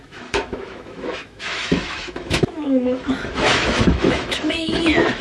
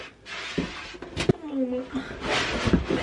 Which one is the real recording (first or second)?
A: second